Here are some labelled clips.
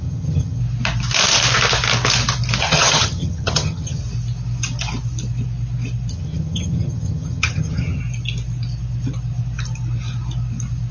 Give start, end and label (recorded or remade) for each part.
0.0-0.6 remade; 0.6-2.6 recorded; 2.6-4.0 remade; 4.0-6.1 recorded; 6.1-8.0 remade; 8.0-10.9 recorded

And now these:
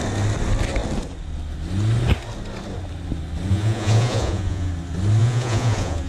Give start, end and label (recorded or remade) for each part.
0.0-3.5 recorded; 3.5-4.7 remade; 4.7-5.2 recorded; 5.2-6.1 remade